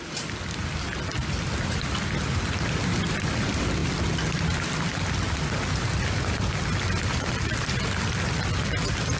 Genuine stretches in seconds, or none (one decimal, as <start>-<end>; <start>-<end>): 0.0-9.2